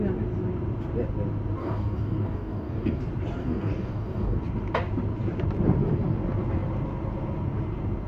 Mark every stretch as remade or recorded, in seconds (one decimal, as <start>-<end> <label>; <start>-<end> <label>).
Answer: 0.0-1.6 recorded; 1.6-3.0 remade; 3.0-3.4 recorded; 3.4-4.4 remade; 4.4-8.1 recorded

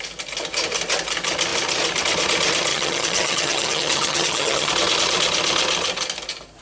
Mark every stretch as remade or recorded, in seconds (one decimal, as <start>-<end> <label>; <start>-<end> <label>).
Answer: 0.0-2.7 recorded; 2.7-4.7 remade; 4.7-6.6 recorded

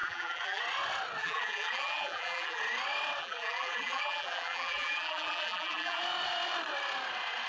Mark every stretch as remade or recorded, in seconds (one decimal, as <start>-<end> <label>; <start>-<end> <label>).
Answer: 0.0-0.6 remade; 0.6-1.2 recorded; 1.2-2.6 remade; 2.6-3.2 recorded; 3.2-6.0 remade; 6.0-7.5 recorded

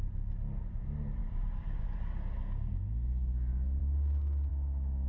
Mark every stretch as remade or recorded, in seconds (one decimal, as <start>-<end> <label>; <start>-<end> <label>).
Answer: 0.0-1.2 recorded; 1.2-1.8 remade; 1.8-3.8 recorded; 3.8-4.5 remade; 4.5-5.1 recorded

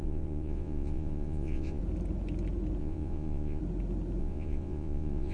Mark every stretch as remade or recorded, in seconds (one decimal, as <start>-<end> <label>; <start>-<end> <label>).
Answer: 0.0-1.8 remade; 1.8-2.8 recorded; 2.8-3.6 remade; 3.6-4.2 recorded; 4.2-5.3 remade

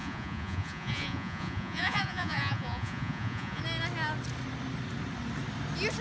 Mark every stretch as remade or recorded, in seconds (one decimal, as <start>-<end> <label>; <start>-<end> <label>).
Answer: 0.0-3.6 remade; 3.6-6.0 recorded